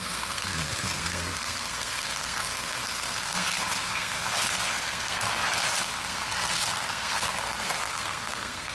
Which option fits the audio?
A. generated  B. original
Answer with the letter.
A